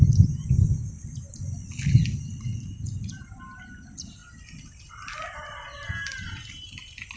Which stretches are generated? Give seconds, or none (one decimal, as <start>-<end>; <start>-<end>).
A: 2.5-3.6; 5.7-6.8